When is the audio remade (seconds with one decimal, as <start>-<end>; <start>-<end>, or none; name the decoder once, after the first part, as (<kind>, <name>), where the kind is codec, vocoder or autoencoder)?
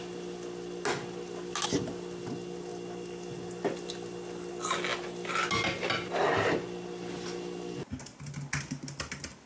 none